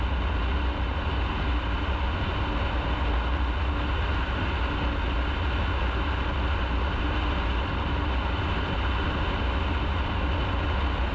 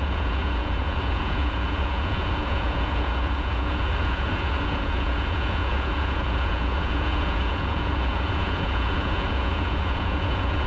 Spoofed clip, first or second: second